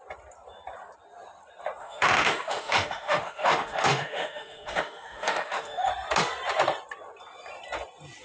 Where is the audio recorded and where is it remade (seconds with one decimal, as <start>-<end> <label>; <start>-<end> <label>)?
0.0-1.8 recorded; 1.8-5.9 remade; 5.9-8.2 recorded